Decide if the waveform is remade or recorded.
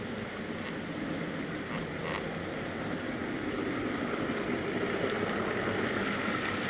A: recorded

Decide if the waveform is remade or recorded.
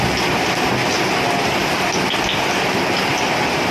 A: recorded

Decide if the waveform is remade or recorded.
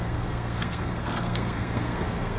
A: remade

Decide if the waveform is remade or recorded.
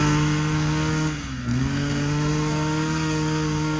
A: remade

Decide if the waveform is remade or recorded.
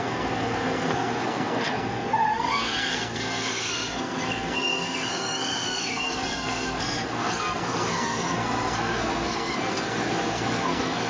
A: remade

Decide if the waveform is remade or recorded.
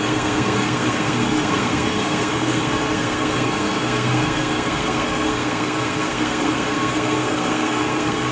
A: remade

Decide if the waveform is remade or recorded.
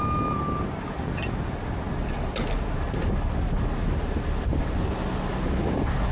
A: recorded